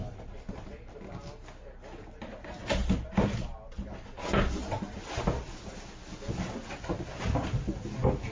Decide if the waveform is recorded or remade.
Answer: recorded